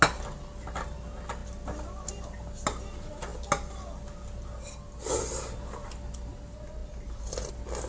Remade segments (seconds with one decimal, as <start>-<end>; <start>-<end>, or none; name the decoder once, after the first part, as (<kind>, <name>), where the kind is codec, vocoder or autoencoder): none

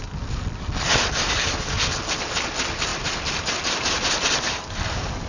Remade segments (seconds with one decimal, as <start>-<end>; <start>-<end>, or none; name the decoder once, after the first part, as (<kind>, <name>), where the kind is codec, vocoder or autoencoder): 2.9-3.6 (vocoder, BigVGAN v2)

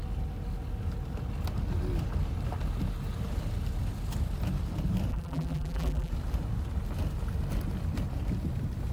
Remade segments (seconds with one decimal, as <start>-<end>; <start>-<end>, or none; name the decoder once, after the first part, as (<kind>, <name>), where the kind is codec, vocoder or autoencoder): 5.1-6.1 (vocoder, BigVGAN v2)